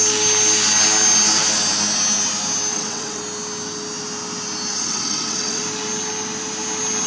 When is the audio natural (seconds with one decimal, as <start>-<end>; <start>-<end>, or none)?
0.0-2.7; 3.2-4.7; 5.6-7.1